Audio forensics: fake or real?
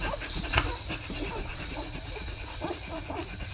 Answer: fake